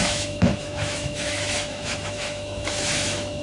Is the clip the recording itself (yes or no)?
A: no